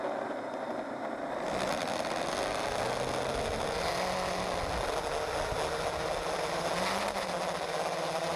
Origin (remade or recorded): recorded